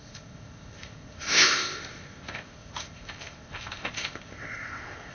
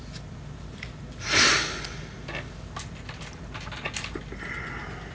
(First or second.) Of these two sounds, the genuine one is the second